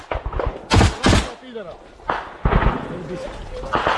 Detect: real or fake real